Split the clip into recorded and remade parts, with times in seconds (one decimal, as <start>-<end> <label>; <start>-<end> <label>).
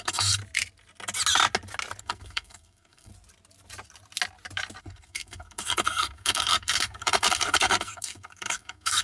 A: 0.0-0.4 remade; 0.4-2.0 recorded; 2.0-3.1 remade; 3.1-4.8 recorded; 4.8-9.0 remade